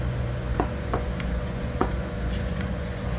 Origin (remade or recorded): remade